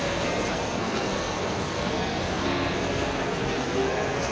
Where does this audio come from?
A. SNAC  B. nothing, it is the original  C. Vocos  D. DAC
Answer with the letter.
A